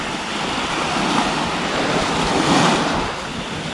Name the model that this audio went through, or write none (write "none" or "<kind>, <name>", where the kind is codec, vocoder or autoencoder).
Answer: none